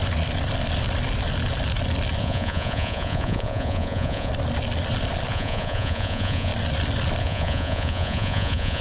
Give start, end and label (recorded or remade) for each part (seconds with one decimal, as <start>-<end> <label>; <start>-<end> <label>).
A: 0.0-2.2 recorded; 2.2-4.3 remade; 4.3-5.3 recorded; 5.3-6.5 remade; 6.5-7.2 recorded; 7.2-8.8 remade

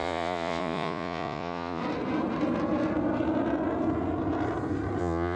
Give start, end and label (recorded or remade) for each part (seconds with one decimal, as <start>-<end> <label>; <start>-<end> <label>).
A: 0.0-1.8 remade; 1.8-5.0 recorded; 5.0-5.4 remade